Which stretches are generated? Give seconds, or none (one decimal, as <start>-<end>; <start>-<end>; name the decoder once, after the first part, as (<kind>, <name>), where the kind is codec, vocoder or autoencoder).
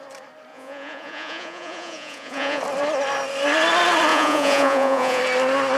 0.5-2.6 (vocoder, Vocos); 4.1-5.2